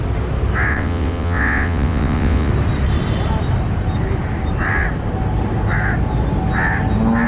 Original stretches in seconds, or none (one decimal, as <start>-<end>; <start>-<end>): 0.0-0.7; 2.5-7.3